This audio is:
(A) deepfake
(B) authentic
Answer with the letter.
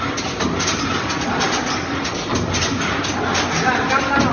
B